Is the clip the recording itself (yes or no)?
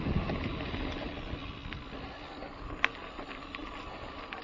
yes